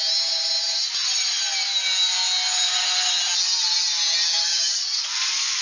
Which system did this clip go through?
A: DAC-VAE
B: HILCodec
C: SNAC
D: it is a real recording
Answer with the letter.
D